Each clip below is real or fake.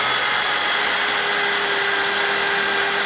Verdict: real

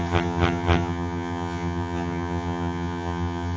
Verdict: fake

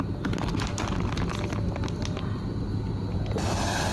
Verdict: real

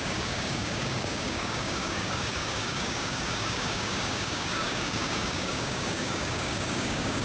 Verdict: fake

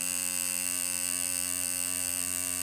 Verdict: fake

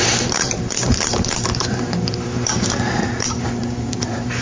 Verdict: fake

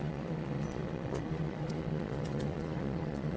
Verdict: fake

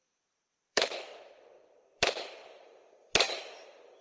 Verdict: fake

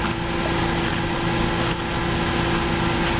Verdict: real